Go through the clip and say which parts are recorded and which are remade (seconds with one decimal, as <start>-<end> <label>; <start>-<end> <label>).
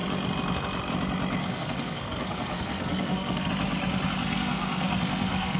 0.0-1.4 recorded; 1.4-3.5 remade; 3.5-4.2 recorded; 4.2-5.6 remade